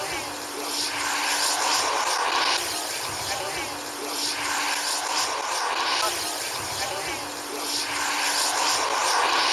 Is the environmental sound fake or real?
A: real